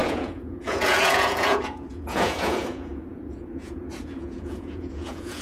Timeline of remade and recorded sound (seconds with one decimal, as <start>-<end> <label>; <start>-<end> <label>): 0.0-5.4 remade